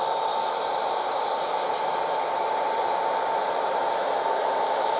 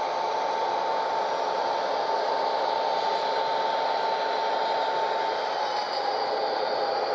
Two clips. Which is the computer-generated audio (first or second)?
first